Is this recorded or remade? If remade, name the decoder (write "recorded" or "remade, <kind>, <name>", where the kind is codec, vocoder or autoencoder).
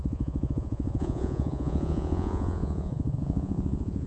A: remade, vocoder, Vocos